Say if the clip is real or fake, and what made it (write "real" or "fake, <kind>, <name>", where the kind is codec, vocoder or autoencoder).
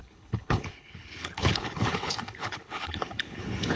fake, codec, HILCodec